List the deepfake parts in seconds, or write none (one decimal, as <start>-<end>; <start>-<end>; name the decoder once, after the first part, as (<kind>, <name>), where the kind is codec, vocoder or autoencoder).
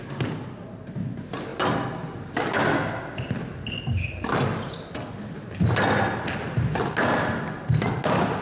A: none